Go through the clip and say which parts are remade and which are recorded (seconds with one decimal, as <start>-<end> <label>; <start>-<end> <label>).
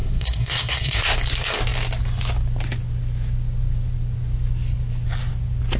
0.0-1.2 remade; 1.2-5.8 recorded